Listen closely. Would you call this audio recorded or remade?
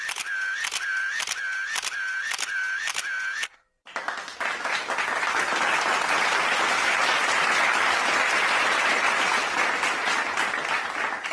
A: recorded